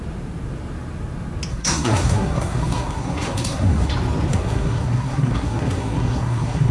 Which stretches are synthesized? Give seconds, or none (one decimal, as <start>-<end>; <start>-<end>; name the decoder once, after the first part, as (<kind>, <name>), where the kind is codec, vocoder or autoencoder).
1.5-3.9 (codec, SNAC); 4.3-6.7